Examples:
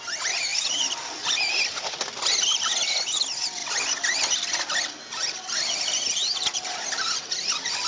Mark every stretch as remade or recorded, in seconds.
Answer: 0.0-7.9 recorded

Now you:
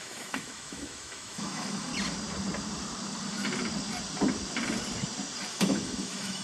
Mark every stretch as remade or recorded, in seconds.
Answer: 0.0-1.9 remade; 1.9-5.5 recorded; 5.5-6.4 remade